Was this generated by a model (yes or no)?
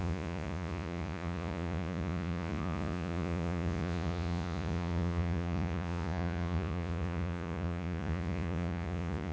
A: yes